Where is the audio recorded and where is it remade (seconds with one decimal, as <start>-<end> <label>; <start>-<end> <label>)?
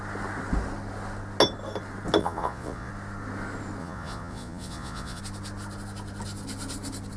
0.0-2.2 recorded; 2.2-2.9 remade; 2.9-3.8 recorded; 3.8-5.2 remade; 5.2-7.2 recorded